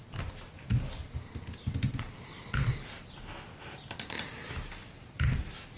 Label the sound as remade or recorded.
remade